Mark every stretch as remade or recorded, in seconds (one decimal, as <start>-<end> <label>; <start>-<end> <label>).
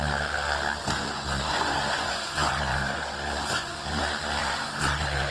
0.0-0.8 recorded; 0.8-4.0 remade; 4.0-4.4 recorded; 4.4-5.3 remade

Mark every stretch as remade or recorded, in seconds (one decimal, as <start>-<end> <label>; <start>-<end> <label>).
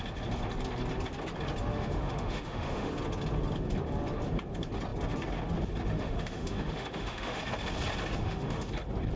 0.0-1.7 recorded; 1.7-2.9 remade; 2.9-5.9 recorded; 5.9-7.4 remade; 7.4-8.2 recorded; 8.2-8.7 remade; 8.7-9.2 recorded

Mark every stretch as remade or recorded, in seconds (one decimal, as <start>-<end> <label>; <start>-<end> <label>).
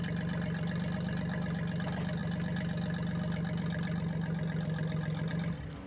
0.0-5.9 recorded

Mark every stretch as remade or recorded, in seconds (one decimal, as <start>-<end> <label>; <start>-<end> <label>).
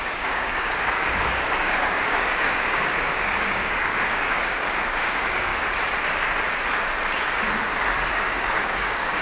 0.0-5.5 remade; 5.5-8.1 recorded; 8.1-9.2 remade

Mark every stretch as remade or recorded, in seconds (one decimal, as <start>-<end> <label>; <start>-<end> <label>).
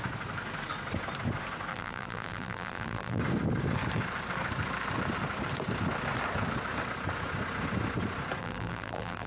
0.0-1.7 recorded; 1.7-3.2 remade; 3.2-8.4 recorded; 8.4-9.3 remade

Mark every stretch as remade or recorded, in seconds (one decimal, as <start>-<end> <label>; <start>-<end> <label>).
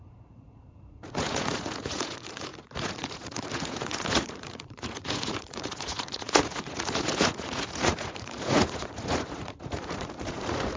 0.0-10.8 remade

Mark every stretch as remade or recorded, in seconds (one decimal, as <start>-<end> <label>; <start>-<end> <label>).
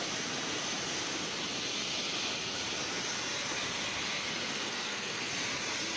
0.0-4.5 recorded; 4.5-5.3 remade; 5.3-6.0 recorded